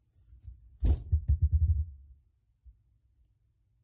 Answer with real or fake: real